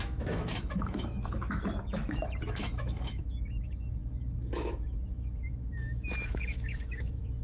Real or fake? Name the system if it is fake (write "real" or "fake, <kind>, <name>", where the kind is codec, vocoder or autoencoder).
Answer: fake, autoencoder, DAC-VAE